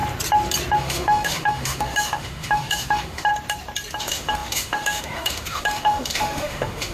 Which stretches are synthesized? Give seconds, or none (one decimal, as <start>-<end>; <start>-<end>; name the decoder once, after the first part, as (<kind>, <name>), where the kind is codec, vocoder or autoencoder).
0.8-3.3 (autoencoder, DAC-VAE); 4.0-6.9